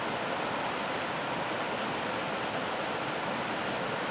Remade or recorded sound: recorded